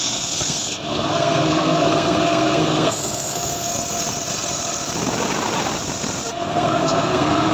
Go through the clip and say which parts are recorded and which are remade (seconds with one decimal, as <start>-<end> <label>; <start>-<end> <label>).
0.0-3.7 remade; 3.7-6.3 recorded; 6.3-7.5 remade